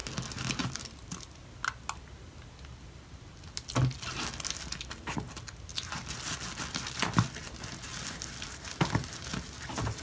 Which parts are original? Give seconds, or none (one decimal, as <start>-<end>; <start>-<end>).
0.0-10.0